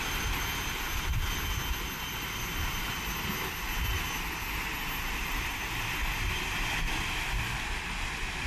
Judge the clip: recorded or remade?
recorded